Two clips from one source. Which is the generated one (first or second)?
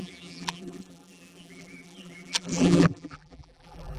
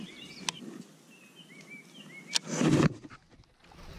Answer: first